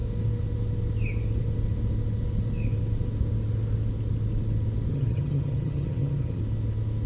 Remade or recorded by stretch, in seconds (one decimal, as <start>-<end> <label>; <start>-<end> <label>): 0.0-4.9 recorded; 4.9-6.4 remade; 6.4-7.1 recorded